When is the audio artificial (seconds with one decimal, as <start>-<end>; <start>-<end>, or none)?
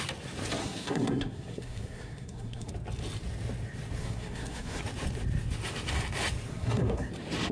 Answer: 0.6-2.7; 4.0-4.8; 6.5-7.1